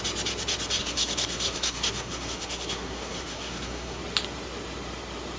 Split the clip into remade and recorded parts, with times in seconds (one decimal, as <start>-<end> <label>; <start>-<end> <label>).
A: 0.0-0.8 recorded; 0.8-4.0 remade; 4.0-5.4 recorded